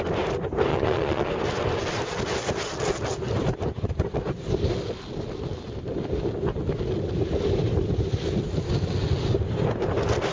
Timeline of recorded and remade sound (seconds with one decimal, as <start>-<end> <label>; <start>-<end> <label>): 0.0-0.7 recorded; 0.7-1.3 remade; 1.3-10.3 recorded